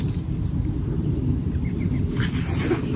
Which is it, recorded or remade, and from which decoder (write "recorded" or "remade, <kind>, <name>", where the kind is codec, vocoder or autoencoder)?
recorded